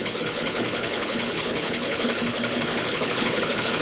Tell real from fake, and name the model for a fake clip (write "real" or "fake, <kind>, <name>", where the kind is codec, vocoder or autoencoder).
fake, codec, HILCodec